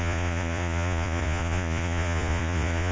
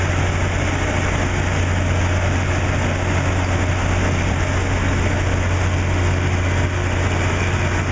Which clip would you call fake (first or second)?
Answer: first